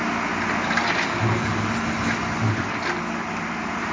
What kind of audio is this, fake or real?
real